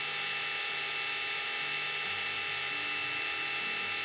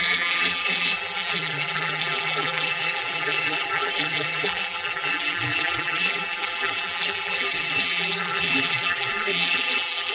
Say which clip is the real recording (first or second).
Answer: first